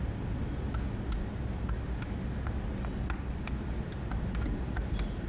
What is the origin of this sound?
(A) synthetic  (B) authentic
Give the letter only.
B